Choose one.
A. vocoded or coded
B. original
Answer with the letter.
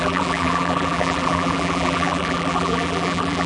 A